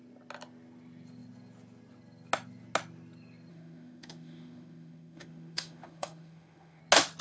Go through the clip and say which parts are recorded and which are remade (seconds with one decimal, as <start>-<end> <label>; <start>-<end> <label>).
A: 0.0-3.5 recorded; 3.5-6.8 remade; 6.8-7.2 recorded